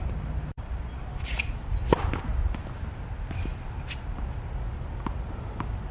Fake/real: real